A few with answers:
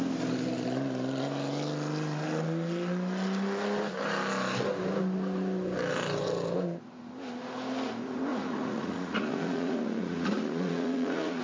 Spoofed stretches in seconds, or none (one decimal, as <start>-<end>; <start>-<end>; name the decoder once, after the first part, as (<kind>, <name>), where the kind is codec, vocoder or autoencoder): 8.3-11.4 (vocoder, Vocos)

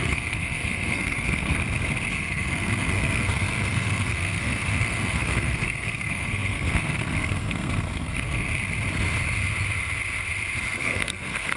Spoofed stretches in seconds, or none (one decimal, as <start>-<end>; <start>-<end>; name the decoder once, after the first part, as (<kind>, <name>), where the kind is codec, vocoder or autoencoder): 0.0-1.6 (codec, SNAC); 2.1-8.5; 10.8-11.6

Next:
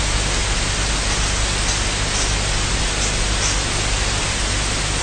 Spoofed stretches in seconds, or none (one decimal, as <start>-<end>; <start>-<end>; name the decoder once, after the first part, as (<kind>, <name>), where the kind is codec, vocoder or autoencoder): none

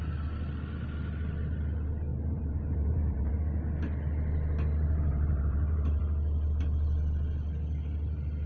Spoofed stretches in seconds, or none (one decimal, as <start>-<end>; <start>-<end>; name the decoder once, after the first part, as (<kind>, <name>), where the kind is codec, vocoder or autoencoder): 2.1-3.3 (vocoder, BigVGAN v2); 5.1-6.0

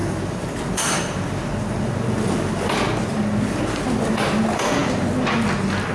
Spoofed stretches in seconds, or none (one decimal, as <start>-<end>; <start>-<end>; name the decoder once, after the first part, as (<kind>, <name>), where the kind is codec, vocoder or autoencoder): none